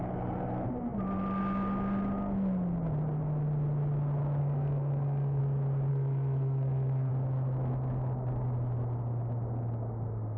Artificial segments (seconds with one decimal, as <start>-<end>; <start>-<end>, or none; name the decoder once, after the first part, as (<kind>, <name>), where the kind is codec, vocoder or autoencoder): 4.4-5.4 (codec, SNAC); 5.9-7.1